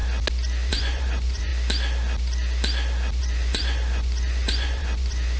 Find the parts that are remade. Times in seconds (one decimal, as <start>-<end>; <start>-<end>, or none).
0.7-1.5; 3.2-5.4